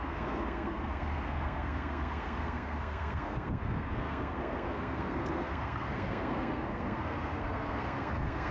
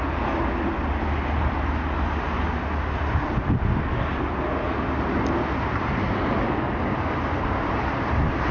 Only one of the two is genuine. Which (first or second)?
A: second